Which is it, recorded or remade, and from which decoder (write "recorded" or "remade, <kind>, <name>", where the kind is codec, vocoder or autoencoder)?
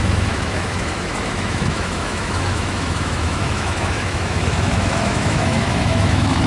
remade, autoencoder, DAC-VAE